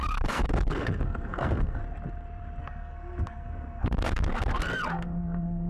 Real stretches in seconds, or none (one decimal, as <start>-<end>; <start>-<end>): 1.8-2.6